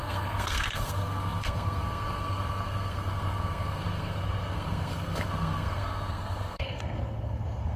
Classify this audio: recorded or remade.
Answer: remade